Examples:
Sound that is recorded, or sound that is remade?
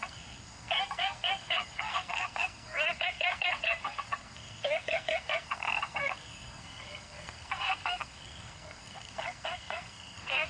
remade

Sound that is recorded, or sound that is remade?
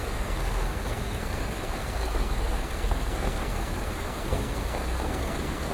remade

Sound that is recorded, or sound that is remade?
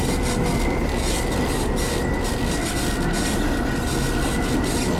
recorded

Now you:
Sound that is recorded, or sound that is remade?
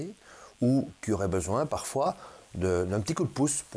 recorded